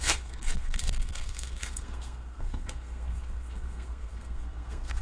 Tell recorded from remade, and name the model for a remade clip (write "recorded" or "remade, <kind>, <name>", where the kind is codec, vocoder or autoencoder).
remade, codec, SNAC